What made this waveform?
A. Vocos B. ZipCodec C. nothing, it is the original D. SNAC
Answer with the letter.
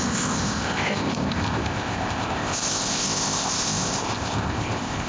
B